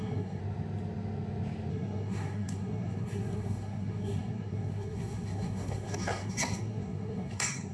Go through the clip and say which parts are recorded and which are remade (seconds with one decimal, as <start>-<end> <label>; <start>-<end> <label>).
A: 0.0-0.4 remade; 0.4-1.7 recorded; 1.7-7.7 remade